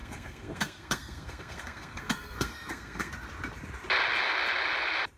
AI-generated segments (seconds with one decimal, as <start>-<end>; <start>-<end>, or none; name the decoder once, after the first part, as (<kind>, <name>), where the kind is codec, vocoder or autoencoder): 0.0-3.1 (codec, SNAC)